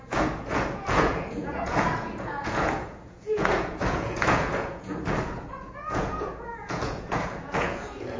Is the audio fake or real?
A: fake